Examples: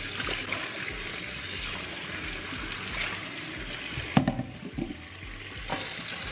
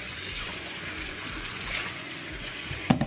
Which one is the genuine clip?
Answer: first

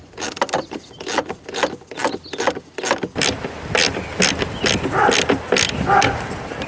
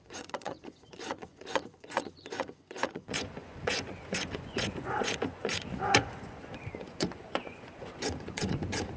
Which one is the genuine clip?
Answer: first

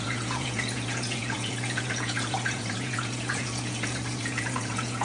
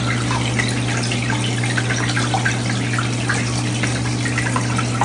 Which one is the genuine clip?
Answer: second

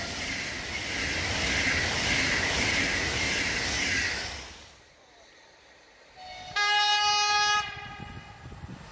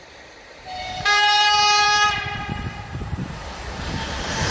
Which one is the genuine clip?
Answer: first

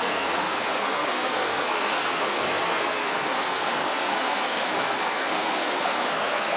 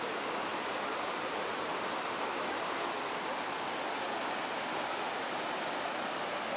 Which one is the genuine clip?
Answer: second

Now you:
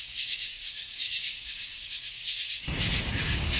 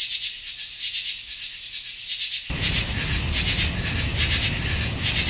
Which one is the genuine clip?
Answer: second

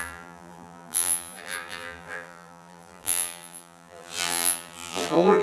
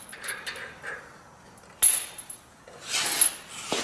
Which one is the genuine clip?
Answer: second